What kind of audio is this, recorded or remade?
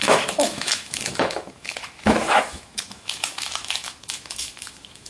remade